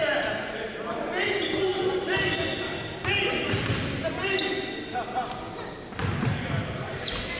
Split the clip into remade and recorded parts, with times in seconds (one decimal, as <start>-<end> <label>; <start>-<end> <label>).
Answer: 0.0-7.4 recorded